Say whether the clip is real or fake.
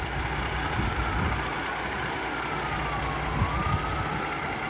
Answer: real